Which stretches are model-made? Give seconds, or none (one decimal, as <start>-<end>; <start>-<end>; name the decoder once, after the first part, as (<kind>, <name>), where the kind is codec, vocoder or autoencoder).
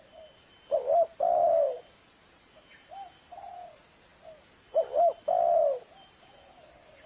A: none